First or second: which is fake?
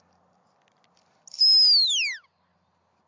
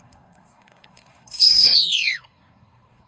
second